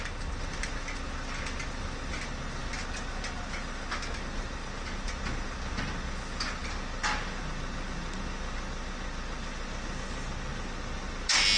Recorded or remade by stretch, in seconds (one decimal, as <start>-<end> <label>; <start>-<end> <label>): 0.0-11.6 recorded